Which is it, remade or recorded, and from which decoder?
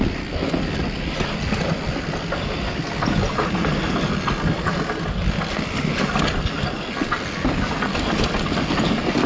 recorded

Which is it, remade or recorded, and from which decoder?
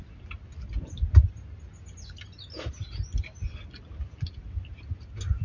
recorded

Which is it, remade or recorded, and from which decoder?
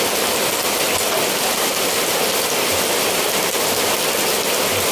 recorded